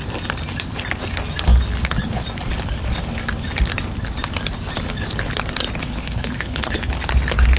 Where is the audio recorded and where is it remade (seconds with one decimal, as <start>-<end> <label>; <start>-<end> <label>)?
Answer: 0.0-5.8 recorded; 5.8-6.8 remade; 6.8-7.6 recorded